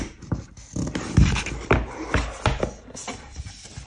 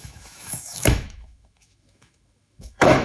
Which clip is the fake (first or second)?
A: second